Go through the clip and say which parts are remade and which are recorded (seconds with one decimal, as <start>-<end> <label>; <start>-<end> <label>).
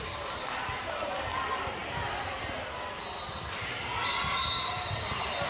0.0-5.5 recorded